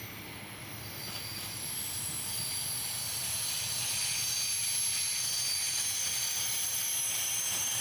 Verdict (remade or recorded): recorded